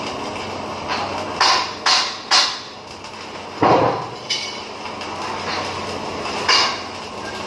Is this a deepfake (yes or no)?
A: no